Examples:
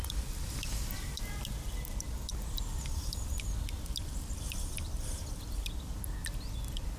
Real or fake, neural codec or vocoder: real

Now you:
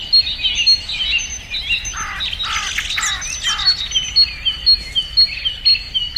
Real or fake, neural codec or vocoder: real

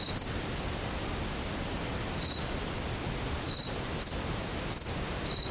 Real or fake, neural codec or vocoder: real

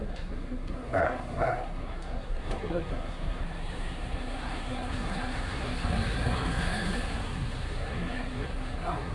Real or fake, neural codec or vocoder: fake, codec, SNAC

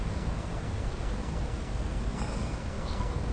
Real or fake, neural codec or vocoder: fake, codec, SNAC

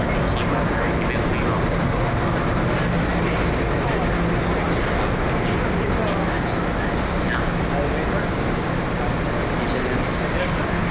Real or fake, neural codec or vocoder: real